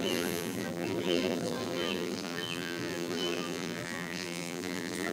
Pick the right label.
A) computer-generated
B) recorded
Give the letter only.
A